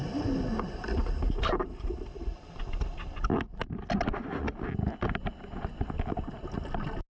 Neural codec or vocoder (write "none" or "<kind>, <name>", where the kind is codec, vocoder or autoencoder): none